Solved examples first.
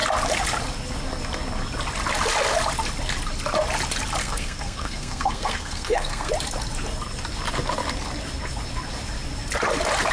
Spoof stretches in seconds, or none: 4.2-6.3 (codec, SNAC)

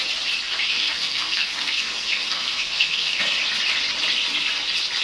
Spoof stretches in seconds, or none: 0.7-3.2 (codec, SNAC)

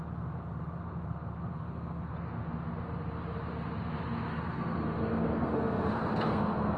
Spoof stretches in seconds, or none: 1.5-2.1 (codec, SNAC); 4.3-6.8

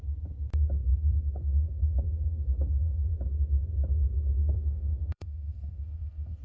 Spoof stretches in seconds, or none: 0.9-3.1 (codec, SNAC); 4.4-6.4

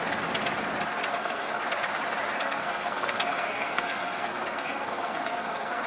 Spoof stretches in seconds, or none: 1.1-1.6 (codec, SNAC); 2.4-5.9

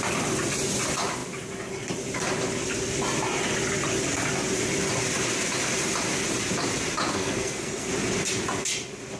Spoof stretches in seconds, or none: 7.1-7.9 (codec, SNAC)

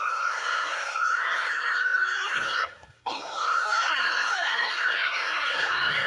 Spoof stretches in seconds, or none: 0.0-6.1 (codec, SNAC)

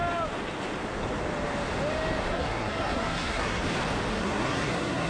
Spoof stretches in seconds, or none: 2.3-3.6 (codec, SNAC); 4.1-5.1